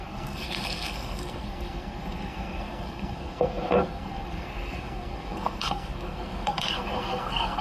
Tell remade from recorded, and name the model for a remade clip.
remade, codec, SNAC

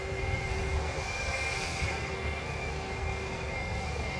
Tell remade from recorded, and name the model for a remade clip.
remade, codec, SNAC